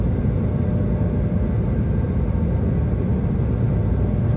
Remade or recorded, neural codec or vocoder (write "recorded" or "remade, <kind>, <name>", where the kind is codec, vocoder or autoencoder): recorded